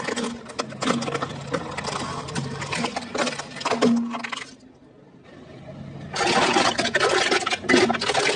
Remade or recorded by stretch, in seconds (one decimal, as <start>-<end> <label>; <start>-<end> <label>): 0.0-1.3 recorded; 1.3-3.2 remade; 3.2-8.4 recorded